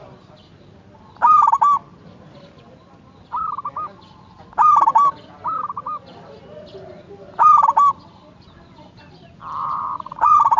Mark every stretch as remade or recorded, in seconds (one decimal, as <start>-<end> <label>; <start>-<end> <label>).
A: 0.0-9.6 recorded; 9.6-10.6 remade